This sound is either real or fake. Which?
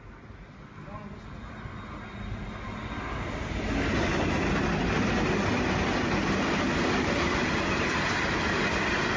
real